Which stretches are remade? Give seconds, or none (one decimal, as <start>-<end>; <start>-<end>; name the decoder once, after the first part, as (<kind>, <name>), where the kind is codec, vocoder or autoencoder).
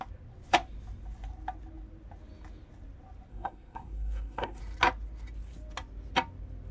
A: 3.3-4.6 (codec, SNAC)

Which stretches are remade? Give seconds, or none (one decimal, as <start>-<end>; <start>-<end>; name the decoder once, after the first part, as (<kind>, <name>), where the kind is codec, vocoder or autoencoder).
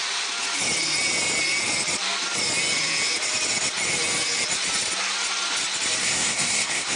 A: 6.0-7.0 (codec, SNAC)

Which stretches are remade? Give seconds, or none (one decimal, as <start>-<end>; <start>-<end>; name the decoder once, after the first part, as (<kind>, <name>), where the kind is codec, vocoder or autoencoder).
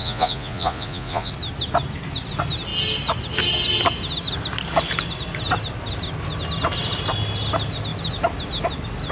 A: 0.0-1.3 (vocoder, Vocos)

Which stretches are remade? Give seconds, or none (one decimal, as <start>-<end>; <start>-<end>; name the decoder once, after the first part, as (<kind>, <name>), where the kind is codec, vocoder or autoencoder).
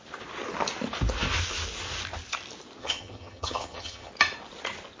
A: 2.8-4.1 (vocoder, HiFi-GAN)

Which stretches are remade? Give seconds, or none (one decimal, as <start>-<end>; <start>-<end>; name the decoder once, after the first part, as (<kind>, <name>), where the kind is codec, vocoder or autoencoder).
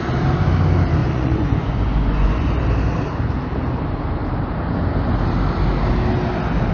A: 1.0-2.6 (vocoder, Vocos)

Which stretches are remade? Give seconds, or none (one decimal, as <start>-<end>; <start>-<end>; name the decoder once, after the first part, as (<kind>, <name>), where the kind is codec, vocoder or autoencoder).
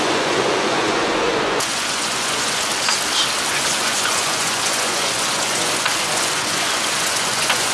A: 0.0-2.7 (vocoder, Vocos); 3.5-7.7